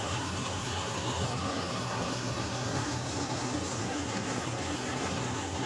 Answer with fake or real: fake